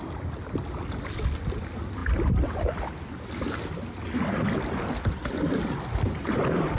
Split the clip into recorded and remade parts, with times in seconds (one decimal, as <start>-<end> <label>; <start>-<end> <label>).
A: 0.0-6.8 recorded